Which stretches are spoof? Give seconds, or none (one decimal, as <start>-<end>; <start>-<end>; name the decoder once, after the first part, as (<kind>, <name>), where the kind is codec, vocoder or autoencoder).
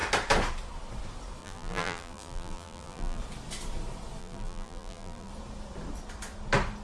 1.4-3.2 (vocoder, BigVGAN v2); 4.2-5.3